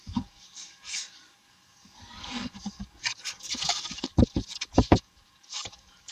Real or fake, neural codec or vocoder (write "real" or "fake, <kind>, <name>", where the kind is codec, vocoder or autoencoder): fake, codec, DAC